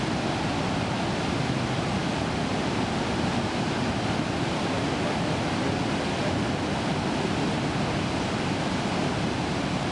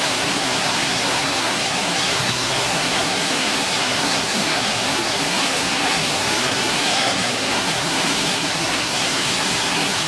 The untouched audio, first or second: first